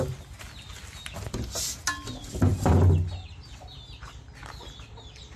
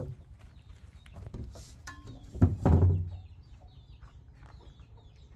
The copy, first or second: second